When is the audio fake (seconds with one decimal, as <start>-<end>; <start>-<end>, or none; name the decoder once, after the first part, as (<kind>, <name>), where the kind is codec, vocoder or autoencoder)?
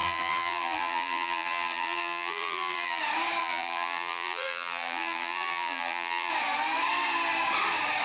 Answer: 0.0-3.0 (vocoder, BigVGAN v2); 3.4-6.3